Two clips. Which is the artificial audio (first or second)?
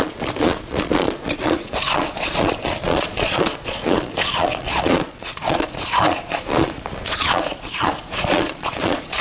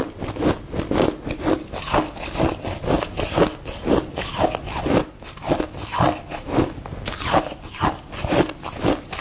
first